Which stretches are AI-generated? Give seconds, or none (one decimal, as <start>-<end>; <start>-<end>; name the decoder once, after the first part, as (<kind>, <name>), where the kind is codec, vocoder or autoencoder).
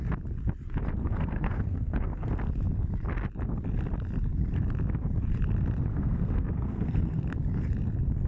1.0-2.3 (codec, SNAC); 5.9-7.2